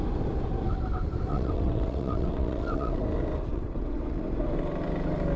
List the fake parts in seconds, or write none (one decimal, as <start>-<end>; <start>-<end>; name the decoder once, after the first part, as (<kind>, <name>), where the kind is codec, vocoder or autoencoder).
1.3-3.0 (vocoder, WaveNeXt); 3.5-4.2